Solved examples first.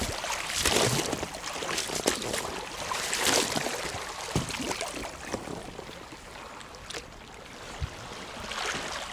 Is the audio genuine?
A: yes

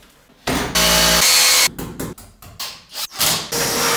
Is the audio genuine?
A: yes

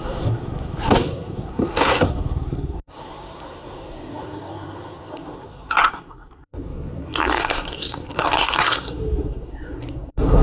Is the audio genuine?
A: no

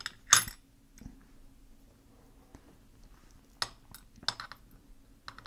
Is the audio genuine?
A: yes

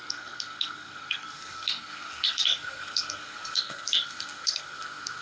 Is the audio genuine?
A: no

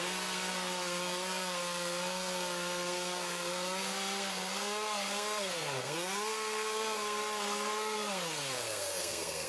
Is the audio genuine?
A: no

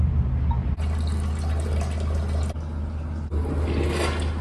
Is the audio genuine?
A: yes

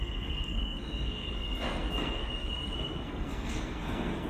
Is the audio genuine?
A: no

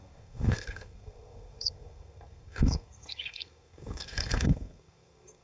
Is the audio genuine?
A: no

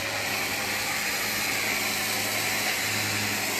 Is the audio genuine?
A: yes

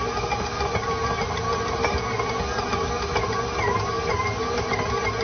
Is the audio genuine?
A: yes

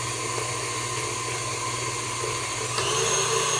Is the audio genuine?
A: yes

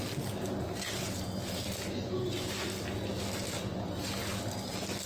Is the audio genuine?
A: yes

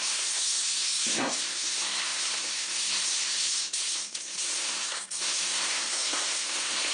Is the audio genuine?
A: no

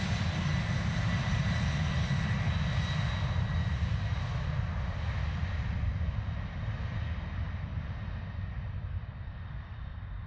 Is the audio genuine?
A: yes